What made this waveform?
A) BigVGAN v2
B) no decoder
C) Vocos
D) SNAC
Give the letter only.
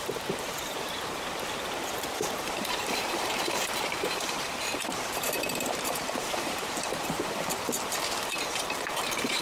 A